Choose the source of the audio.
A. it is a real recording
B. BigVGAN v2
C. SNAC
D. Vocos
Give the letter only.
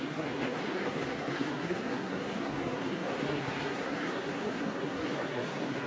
C